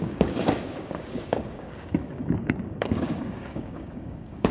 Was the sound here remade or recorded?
remade